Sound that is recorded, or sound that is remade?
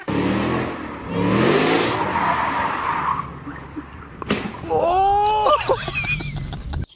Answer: recorded